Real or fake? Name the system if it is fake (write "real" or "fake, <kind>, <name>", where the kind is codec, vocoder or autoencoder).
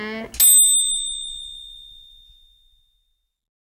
real